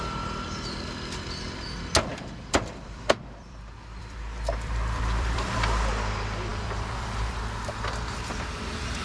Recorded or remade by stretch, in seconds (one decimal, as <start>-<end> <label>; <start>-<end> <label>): 0.0-2.1 recorded; 2.1-5.9 remade; 5.9-6.5 recorded; 6.5-7.3 remade; 7.3-9.0 recorded